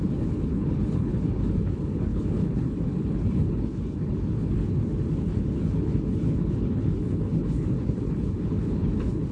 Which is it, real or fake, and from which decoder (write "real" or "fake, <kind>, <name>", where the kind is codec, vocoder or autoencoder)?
fake, codec, HILCodec